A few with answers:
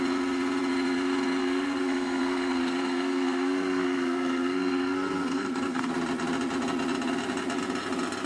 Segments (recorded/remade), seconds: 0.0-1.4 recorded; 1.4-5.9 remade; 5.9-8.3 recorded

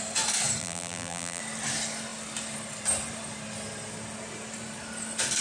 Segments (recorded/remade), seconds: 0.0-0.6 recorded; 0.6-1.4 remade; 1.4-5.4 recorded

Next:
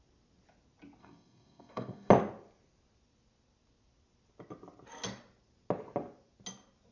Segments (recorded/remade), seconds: 0.0-1.0 recorded; 1.0-2.1 remade; 2.1-6.9 recorded

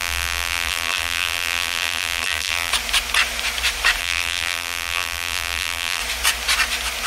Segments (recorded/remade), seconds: 0.0-2.7 remade; 2.7-4.0 recorded; 4.0-6.0 remade; 6.0-7.1 recorded

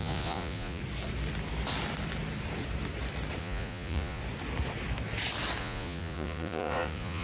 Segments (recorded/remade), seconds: 0.0-0.8 remade; 0.8-3.4 recorded; 3.4-4.2 remade; 4.2-5.6 recorded; 5.6-7.2 remade